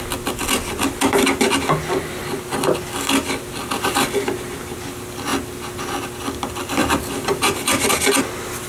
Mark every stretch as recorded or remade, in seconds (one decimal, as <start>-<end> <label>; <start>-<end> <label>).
0.0-6.8 recorded; 6.8-7.9 remade; 7.9-8.7 recorded